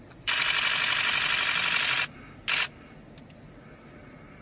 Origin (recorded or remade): recorded